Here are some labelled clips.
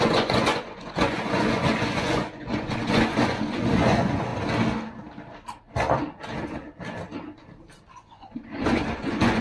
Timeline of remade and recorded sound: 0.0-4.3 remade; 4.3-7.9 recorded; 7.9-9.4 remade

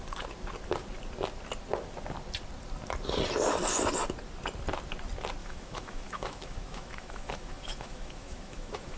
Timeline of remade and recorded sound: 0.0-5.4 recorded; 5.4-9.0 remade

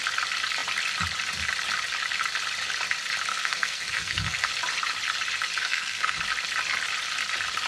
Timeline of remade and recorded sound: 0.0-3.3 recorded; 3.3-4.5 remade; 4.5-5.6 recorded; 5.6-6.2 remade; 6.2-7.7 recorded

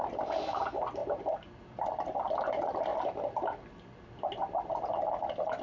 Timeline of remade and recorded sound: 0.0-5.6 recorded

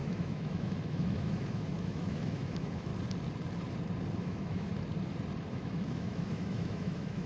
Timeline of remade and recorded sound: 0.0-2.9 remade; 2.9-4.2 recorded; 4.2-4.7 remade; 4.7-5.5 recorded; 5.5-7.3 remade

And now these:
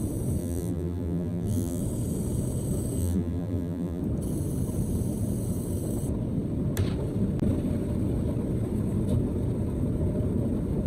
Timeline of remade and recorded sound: 0.0-0.4 recorded; 0.4-1.8 remade; 1.8-3.0 recorded; 3.0-4.0 remade; 4.0-10.9 recorded